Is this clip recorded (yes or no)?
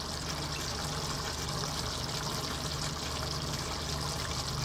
yes